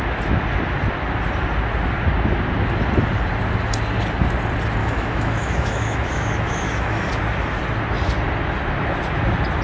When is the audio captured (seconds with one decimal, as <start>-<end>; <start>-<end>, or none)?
0.0-4.8; 7.1-9.6